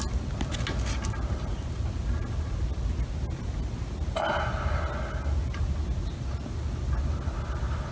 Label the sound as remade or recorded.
recorded